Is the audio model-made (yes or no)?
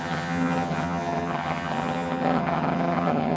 yes